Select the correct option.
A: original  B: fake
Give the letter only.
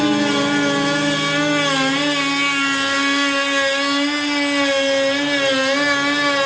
A